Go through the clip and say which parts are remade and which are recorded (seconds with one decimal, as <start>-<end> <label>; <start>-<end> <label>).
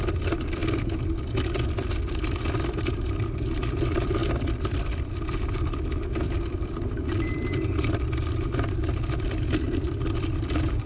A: 0.0-0.6 remade; 0.6-2.0 recorded; 2.0-10.9 remade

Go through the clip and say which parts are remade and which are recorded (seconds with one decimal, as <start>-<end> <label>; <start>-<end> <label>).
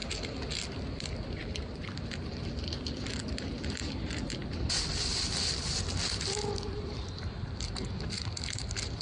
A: 0.0-1.0 recorded; 1.0-9.0 remade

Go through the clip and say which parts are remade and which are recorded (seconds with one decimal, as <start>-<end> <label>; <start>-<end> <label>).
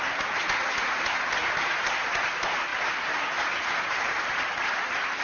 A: 0.0-2.7 recorded; 2.7-4.3 remade; 4.3-5.2 recorded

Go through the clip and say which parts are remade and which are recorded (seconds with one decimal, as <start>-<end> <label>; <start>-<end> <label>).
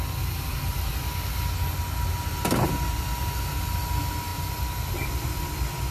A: 0.0-5.9 recorded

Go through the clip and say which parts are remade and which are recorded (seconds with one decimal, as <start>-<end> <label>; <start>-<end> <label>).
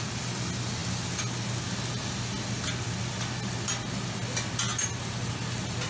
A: 0.0-5.9 recorded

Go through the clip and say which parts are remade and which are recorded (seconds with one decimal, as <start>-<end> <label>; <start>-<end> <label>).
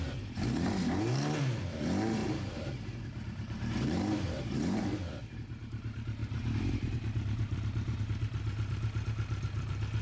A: 0.0-2.2 recorded; 2.2-4.8 remade; 4.8-6.2 recorded; 6.2-8.0 remade; 8.0-10.0 recorded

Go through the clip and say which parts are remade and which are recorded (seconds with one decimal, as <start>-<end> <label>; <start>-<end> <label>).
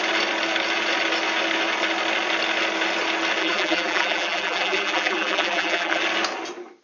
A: 0.0-3.4 recorded; 3.4-6.0 remade; 6.0-6.8 recorded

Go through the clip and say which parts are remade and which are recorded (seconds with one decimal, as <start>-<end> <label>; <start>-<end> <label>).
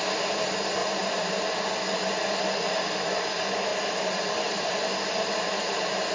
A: 0.0-0.8 recorded; 0.8-1.3 remade; 1.3-3.7 recorded; 3.7-6.1 remade